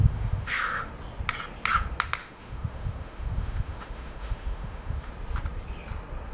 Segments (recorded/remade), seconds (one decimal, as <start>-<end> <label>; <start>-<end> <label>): 0.0-0.9 remade; 0.9-2.2 recorded; 2.2-5.1 remade; 5.1-6.3 recorded